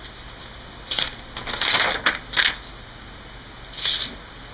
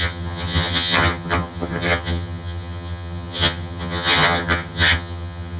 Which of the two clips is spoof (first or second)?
second